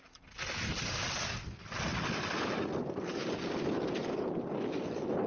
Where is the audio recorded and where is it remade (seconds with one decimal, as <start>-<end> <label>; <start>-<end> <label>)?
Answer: 0.0-5.3 recorded